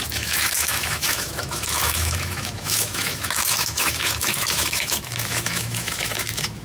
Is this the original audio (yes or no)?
no